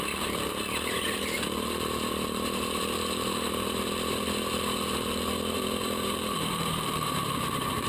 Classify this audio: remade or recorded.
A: remade